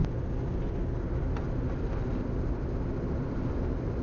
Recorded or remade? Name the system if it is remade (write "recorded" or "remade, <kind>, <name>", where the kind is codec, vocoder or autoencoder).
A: recorded